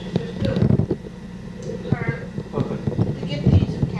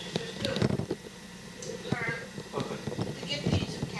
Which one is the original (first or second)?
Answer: first